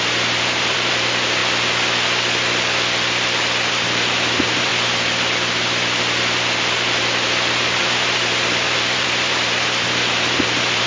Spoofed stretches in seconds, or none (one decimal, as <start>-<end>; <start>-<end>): 0.0-1.4; 3.7-4.7; 7.0-10.9